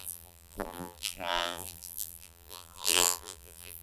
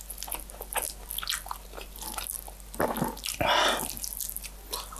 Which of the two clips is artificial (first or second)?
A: first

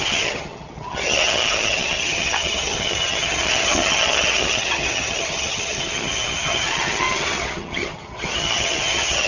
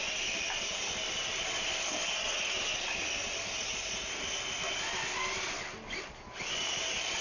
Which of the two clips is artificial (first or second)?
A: first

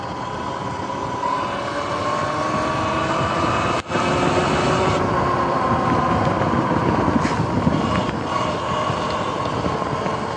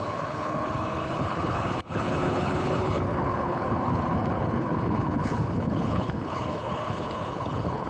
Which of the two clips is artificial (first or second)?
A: second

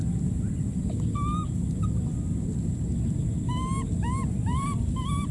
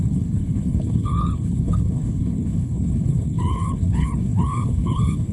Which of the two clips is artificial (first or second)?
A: second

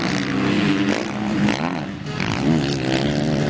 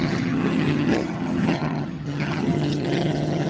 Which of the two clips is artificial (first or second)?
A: second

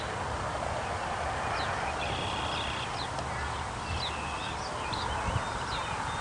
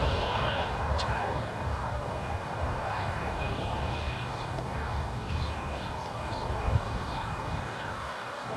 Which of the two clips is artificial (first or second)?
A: second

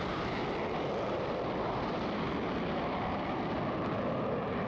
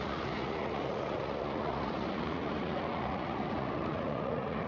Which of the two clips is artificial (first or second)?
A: second